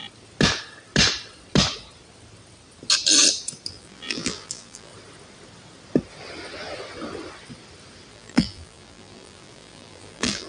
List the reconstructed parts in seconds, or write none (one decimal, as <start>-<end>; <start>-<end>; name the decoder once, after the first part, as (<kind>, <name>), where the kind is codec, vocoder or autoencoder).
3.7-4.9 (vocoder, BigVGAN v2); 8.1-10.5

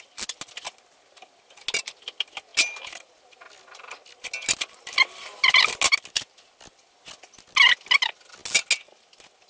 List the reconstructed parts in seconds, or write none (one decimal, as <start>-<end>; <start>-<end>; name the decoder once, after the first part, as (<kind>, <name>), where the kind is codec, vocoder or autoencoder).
none

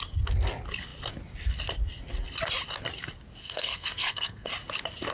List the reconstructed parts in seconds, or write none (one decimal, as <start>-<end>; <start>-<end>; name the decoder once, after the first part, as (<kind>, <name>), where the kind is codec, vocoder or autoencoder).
3.4-4.5 (codec, SNAC)

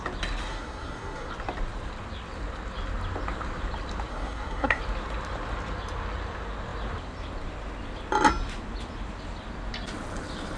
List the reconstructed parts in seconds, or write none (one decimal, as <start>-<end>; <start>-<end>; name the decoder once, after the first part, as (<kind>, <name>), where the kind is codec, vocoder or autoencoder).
0.5-1.3 (codec, SNAC); 4.1-4.8

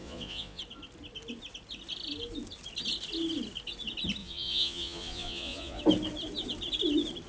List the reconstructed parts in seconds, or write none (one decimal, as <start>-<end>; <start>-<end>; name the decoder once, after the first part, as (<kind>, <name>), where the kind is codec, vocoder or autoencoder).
0.0-0.6 (vocoder, Vocos); 4.2-5.8